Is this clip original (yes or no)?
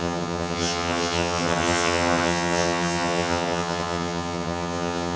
no